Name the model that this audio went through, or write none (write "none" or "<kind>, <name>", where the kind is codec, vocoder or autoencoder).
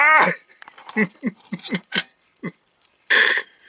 vocoder, BigVGAN v2